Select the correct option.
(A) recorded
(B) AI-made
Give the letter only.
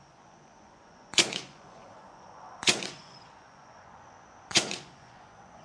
B